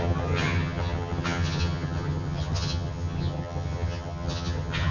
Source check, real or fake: fake